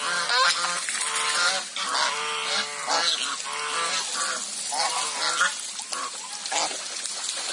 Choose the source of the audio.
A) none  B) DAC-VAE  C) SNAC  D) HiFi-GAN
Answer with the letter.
A